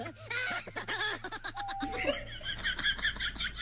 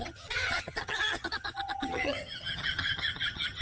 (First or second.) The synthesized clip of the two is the second